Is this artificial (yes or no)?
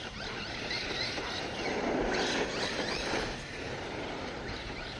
yes